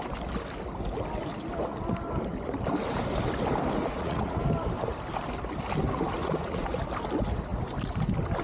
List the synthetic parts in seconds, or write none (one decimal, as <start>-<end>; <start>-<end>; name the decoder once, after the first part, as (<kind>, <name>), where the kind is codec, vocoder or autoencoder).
3.8-4.4 (vocoder, Vocos); 6.2-6.8